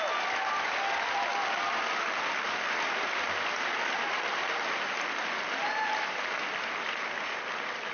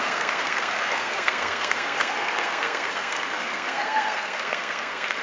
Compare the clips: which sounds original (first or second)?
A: first